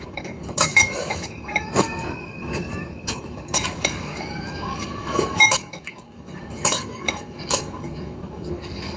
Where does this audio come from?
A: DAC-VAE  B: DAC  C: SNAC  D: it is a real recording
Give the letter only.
B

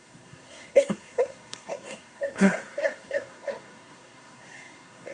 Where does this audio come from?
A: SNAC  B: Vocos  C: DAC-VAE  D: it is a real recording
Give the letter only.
A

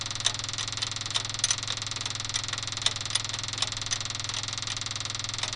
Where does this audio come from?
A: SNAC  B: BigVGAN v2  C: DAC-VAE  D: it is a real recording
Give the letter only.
D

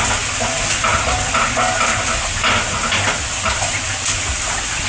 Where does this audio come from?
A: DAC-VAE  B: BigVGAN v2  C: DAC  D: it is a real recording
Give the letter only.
D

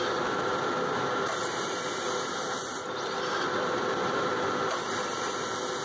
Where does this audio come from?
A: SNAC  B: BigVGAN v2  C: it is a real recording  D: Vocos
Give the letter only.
C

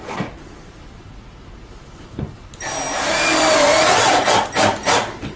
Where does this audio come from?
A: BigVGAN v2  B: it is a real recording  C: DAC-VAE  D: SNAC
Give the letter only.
B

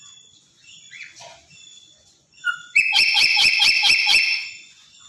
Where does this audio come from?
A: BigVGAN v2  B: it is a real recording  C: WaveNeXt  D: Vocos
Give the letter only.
D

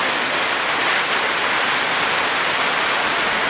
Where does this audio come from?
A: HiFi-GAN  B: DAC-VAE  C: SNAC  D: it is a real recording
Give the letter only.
D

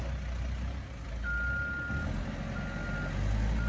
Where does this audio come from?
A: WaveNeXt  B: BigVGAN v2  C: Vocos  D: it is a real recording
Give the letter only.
D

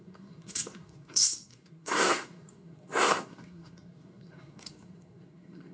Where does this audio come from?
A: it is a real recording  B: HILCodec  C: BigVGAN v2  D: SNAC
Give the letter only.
D